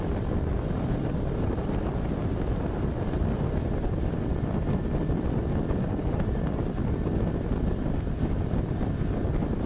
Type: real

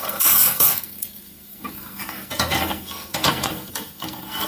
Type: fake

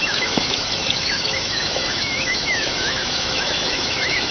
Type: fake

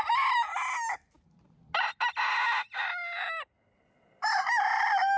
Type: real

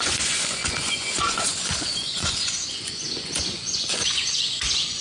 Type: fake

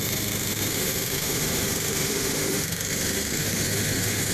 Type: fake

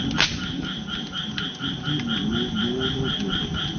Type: real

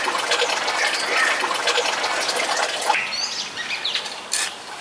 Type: real